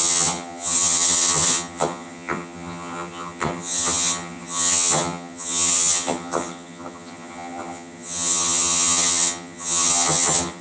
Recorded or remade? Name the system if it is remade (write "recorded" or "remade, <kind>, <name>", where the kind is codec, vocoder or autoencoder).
remade, vocoder, HiFi-GAN